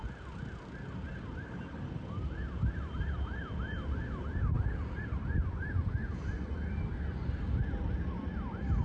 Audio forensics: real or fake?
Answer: real